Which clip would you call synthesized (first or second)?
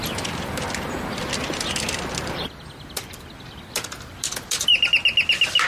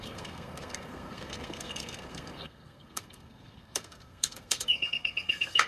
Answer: second